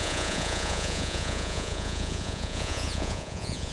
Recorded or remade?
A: remade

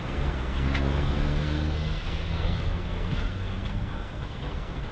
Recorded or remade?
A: remade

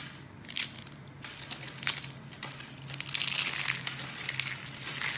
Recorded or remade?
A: recorded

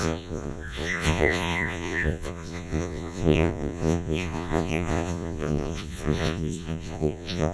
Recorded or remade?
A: remade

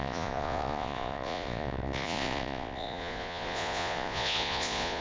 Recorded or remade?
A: remade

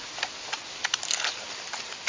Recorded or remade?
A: recorded